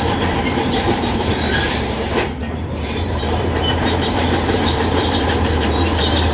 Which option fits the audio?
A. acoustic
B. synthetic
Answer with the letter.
B